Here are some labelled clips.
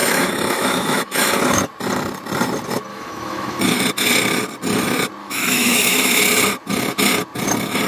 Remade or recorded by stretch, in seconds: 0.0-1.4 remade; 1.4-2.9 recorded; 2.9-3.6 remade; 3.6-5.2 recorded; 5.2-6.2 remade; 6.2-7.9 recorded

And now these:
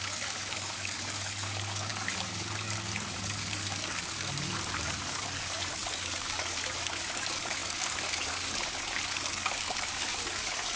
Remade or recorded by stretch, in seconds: 0.0-10.8 remade

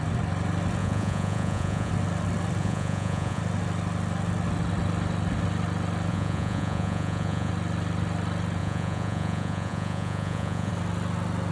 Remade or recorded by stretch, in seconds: 0.0-0.8 recorded; 0.8-1.9 remade; 1.9-2.6 recorded; 2.6-3.4 remade; 3.4-6.1 recorded; 6.1-7.5 remade; 7.5-8.6 recorded; 8.6-10.7 remade; 10.7-11.5 recorded

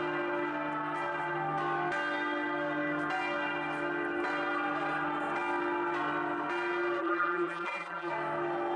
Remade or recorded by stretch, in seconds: 0.0-7.0 recorded; 7.0-8.1 remade; 8.1-8.8 recorded

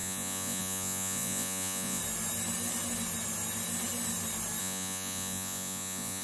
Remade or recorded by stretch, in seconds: 0.0-2.0 remade; 2.0-4.6 recorded; 4.6-6.2 remade

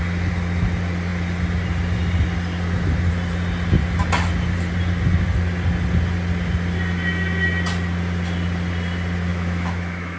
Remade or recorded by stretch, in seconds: 0.0-9.3 recorded; 9.3-10.2 remade